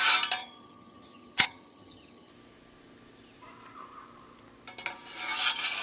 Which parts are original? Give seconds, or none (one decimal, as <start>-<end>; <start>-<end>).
0.0-0.4; 2.3-5.8